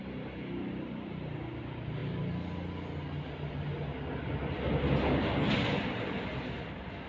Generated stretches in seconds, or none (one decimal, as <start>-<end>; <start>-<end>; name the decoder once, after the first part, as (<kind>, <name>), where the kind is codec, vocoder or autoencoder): none